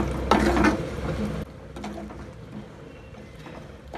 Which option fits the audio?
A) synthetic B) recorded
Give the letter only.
B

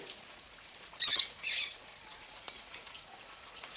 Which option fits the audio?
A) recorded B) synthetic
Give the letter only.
B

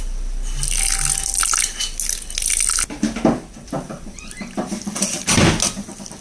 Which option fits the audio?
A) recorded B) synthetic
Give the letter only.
A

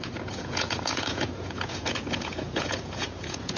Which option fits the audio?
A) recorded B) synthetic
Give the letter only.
B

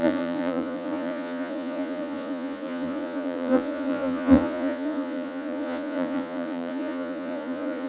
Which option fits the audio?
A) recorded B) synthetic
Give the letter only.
B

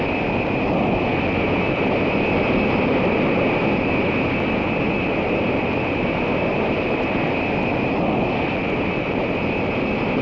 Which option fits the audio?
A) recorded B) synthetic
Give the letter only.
A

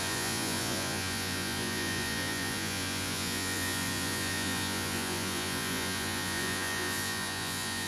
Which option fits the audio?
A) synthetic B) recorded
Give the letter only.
A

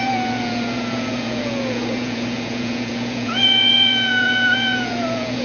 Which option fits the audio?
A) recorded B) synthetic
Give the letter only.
B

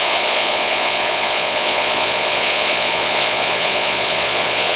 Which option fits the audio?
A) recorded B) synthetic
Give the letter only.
B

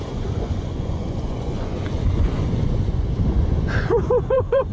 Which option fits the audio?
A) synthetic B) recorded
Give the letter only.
A